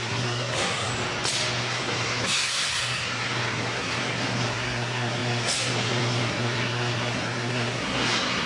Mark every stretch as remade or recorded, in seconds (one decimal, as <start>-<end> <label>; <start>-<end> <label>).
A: 0.0-0.9 remade; 0.9-1.6 recorded; 1.6-8.5 remade